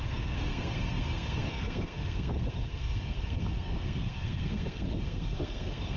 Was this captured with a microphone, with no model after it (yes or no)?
no